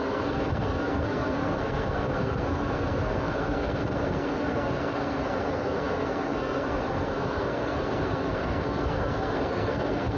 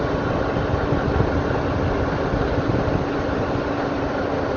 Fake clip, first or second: first